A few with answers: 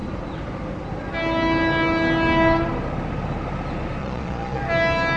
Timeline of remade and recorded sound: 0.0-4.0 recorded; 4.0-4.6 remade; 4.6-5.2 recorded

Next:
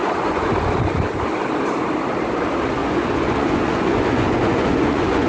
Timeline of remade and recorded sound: 0.0-0.5 remade; 0.5-2.8 recorded; 2.8-5.3 remade

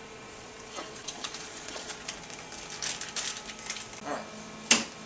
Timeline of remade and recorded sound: 0.0-1.9 remade; 1.9-5.1 recorded